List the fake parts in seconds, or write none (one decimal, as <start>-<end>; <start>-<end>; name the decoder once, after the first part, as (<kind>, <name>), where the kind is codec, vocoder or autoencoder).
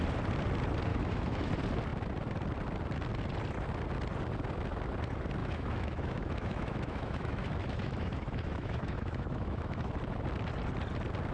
0.9-1.5 (autoencoder, DAC-VAE); 5.4-10.0